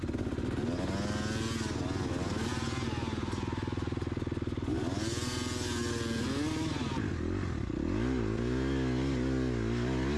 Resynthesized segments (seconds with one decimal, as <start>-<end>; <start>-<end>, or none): none